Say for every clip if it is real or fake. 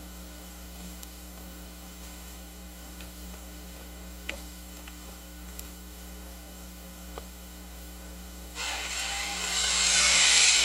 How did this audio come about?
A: fake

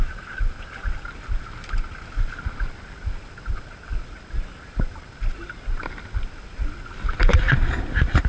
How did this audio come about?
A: real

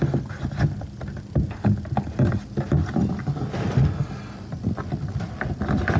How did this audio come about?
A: real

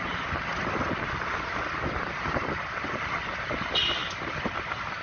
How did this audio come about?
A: real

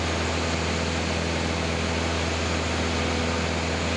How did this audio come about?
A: real